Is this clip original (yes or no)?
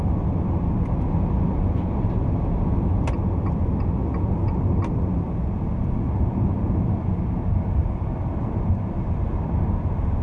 yes